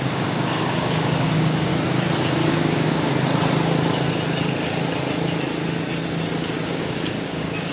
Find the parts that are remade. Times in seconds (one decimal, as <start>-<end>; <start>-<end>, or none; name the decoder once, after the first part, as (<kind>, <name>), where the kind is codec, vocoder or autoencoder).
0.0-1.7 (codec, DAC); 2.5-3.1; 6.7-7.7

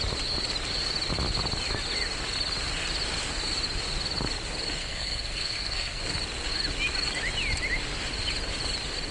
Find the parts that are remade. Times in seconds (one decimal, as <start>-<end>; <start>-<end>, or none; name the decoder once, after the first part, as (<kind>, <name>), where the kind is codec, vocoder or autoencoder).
4.8-6.0 (codec, SNAC)

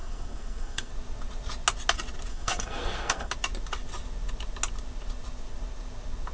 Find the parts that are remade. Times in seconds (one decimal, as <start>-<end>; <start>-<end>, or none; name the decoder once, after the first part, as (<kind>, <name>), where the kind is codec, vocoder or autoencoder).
0.0-0.9 (codec, SNAC); 2.3-3.3

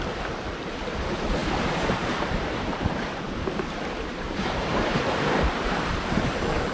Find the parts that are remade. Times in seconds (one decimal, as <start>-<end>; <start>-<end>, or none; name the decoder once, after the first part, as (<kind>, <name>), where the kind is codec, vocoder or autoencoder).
1.4-3.0 (vocoder, BigVGAN v2); 4.1-6.2

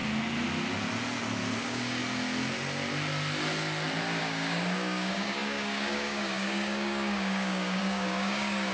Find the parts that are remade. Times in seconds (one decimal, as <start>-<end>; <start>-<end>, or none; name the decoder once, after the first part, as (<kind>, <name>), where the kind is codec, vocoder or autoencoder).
1.6-2.0 (codec, DAC); 4.2-8.7

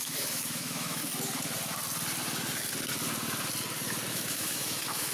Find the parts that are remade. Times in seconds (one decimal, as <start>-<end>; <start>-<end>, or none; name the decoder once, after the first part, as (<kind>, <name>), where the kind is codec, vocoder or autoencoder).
0.0-1.0 (autoencoder, DAC-VAE); 4.1-5.1

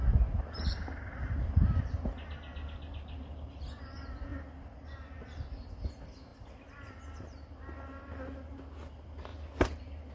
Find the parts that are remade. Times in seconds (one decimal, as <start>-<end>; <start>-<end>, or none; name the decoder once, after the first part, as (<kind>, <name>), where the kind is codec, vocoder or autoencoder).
none